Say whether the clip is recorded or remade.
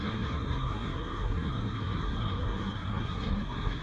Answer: remade